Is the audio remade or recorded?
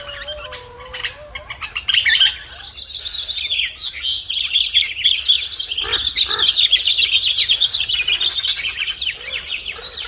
recorded